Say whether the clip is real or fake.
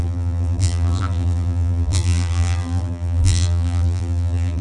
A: fake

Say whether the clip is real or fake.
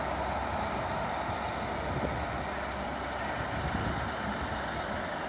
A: real